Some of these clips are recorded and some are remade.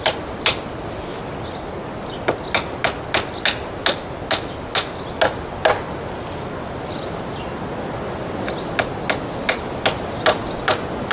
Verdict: recorded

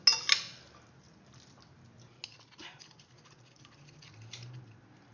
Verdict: recorded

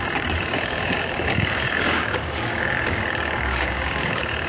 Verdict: remade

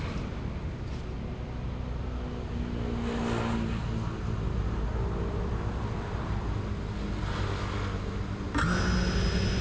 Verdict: recorded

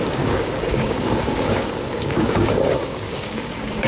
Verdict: remade